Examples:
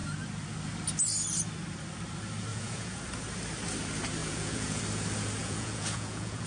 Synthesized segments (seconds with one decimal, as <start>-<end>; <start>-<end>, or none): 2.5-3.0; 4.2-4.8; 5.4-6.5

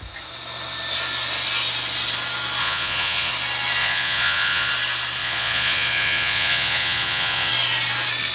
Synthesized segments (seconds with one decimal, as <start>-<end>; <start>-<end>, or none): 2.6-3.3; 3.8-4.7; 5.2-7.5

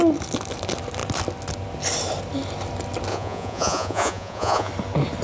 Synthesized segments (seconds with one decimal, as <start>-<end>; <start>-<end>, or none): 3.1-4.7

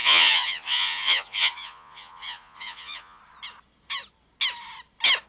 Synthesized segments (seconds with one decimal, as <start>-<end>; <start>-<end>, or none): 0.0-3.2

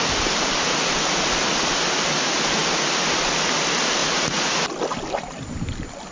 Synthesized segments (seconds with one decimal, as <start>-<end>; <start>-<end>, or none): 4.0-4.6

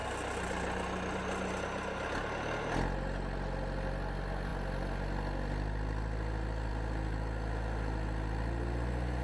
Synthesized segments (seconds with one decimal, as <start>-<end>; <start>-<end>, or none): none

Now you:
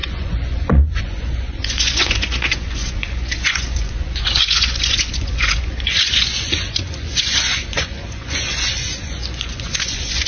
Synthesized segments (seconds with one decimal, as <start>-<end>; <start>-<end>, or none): 0.0-10.3

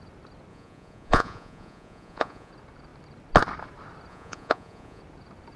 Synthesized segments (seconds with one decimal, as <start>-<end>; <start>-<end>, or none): 0.5-2.5; 4.1-5.0